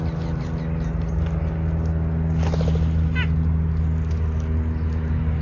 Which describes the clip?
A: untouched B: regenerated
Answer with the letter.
A